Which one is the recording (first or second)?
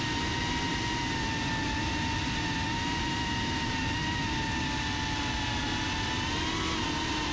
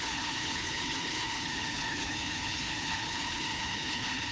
first